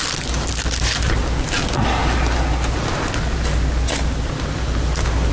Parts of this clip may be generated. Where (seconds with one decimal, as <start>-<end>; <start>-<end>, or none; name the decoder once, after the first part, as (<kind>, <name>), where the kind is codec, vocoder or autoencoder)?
none